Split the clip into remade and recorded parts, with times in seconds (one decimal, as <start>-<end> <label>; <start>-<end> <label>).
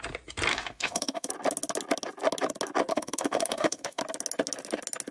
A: 0.0-0.5 recorded; 0.5-1.3 remade; 1.3-2.9 recorded; 2.9-4.0 remade; 4.0-5.1 recorded